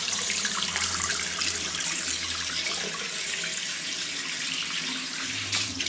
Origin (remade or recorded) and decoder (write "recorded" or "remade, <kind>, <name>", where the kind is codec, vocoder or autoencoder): remade, vocoder, BigVGAN v2